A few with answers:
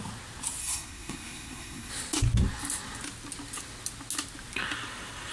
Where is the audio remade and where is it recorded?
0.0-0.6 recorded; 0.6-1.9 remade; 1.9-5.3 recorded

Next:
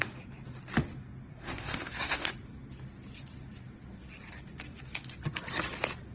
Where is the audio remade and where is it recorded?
0.0-1.3 recorded; 1.3-2.3 remade; 2.3-6.1 recorded